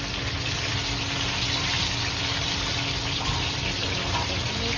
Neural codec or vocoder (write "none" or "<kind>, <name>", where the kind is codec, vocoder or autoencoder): none